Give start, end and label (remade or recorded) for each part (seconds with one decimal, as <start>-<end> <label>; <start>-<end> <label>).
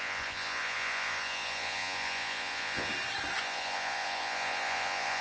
0.0-2.9 remade; 2.9-3.4 recorded; 3.4-5.2 remade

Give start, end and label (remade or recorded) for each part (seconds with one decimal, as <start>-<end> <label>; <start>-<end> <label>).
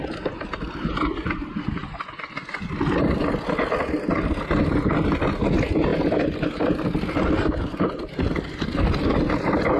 0.0-9.8 recorded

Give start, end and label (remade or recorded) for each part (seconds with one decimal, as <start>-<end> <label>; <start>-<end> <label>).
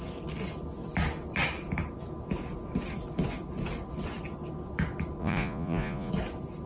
0.0-5.2 recorded; 5.2-6.1 remade; 6.1-6.7 recorded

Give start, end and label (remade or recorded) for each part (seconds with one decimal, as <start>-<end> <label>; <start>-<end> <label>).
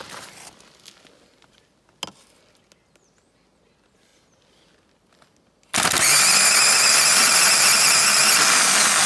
0.0-9.1 recorded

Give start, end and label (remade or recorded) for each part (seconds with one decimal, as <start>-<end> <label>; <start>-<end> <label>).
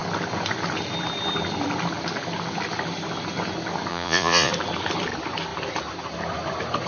0.0-3.9 recorded; 3.9-4.5 remade; 4.5-6.9 recorded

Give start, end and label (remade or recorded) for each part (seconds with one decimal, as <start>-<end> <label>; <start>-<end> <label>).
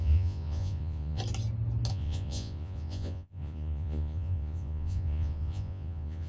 0.0-1.2 remade; 1.2-1.9 recorded; 1.9-6.3 remade